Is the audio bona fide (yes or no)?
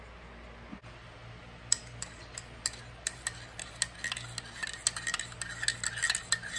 yes